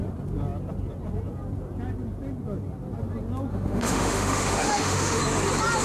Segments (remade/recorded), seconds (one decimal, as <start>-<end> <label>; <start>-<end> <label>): 0.0-3.5 recorded; 3.5-5.2 remade; 5.2-5.8 recorded